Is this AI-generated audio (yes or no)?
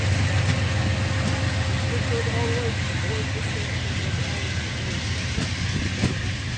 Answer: no